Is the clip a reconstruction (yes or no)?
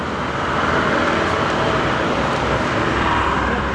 yes